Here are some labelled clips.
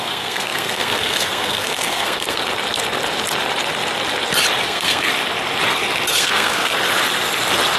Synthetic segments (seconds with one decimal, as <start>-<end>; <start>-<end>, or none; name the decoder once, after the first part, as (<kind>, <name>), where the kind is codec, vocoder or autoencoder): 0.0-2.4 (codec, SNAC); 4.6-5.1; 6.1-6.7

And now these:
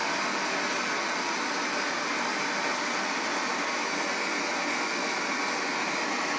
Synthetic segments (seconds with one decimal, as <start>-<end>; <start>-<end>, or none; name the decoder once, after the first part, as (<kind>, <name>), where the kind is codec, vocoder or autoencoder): 1.2-2.3 (vocoder, BigVGAN v2)

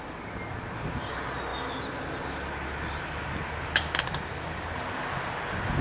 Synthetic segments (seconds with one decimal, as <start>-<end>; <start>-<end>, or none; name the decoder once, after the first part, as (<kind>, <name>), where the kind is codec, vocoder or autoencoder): none